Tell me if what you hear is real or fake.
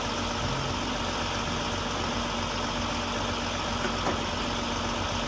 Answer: real